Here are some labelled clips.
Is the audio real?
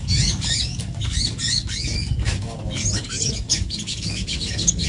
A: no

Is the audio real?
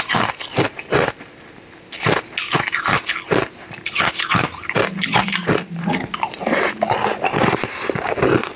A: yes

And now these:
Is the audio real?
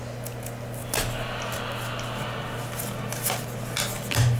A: yes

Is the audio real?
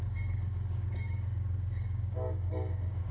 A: no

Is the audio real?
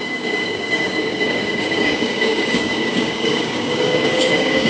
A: no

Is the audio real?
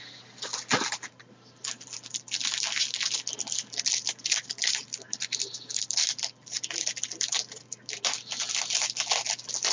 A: yes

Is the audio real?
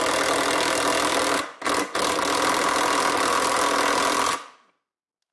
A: yes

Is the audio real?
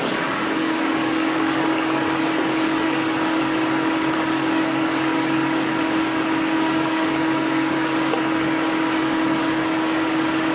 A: no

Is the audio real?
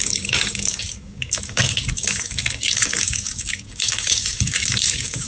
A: no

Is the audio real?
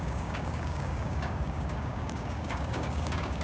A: no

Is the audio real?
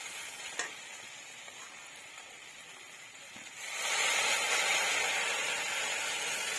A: yes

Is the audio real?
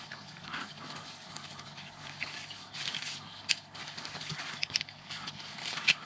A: no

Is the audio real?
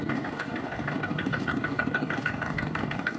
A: no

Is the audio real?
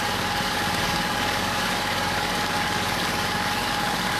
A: no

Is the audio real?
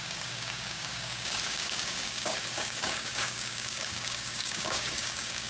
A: no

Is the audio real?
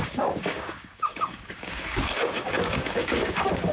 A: no